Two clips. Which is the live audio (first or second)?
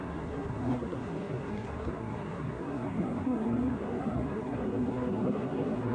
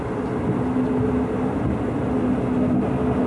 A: second